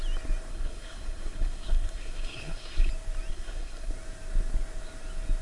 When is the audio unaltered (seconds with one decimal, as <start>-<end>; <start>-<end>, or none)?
0.0-0.5; 2.9-3.3; 3.9-5.4